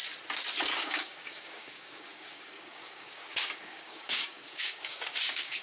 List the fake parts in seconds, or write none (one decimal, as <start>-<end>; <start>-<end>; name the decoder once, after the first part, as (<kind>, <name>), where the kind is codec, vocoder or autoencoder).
0.7-5.6 (codec, DAC)